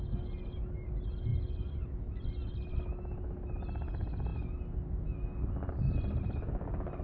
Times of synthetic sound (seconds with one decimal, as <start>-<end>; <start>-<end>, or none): none